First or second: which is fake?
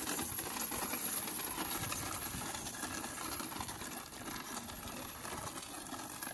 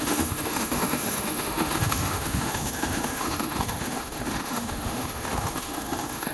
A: second